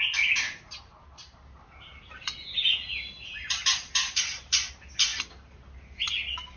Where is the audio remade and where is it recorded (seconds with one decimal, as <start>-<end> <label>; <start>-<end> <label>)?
0.0-6.6 recorded